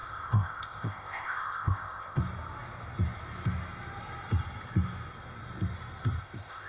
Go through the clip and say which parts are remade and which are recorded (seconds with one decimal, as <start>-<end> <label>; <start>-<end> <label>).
0.0-2.2 remade; 2.2-6.2 recorded; 6.2-6.7 remade